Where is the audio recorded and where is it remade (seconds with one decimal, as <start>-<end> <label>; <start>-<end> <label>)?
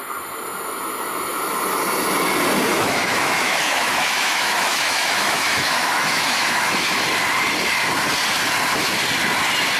0.0-2.7 recorded; 2.7-7.0 remade; 7.0-9.8 recorded